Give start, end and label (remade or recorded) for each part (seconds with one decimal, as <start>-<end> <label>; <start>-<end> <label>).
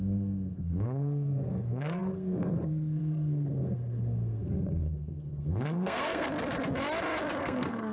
0.0-6.3 remade; 6.3-7.4 recorded; 7.4-7.9 remade